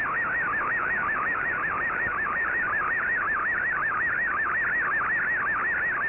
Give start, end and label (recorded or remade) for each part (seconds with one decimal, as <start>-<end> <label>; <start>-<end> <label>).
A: 0.0-0.8 recorded; 0.8-4.5 remade; 4.5-6.1 recorded